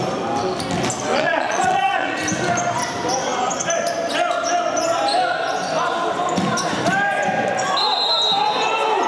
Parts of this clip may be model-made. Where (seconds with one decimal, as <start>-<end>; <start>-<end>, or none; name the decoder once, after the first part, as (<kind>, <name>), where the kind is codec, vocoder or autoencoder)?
1.1-2.2 (vocoder, Vocos)